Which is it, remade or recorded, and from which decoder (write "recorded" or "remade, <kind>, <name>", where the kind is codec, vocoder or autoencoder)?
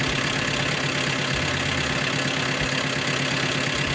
recorded